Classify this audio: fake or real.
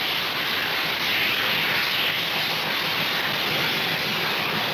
real